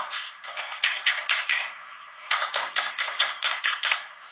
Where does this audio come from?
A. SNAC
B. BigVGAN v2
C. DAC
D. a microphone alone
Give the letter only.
A